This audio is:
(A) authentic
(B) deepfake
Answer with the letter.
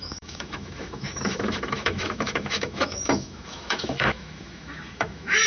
B